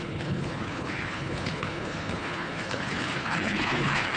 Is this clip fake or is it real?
fake